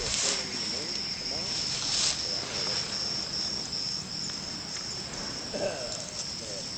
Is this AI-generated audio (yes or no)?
no